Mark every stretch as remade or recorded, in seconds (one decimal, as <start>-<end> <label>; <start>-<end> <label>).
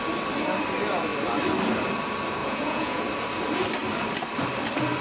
0.0-2.4 recorded; 2.4-3.0 remade; 3.0-5.0 recorded